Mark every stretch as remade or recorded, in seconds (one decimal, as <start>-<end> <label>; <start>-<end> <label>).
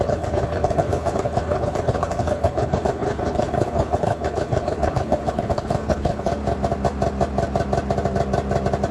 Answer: 0.0-6.3 remade; 6.3-8.9 recorded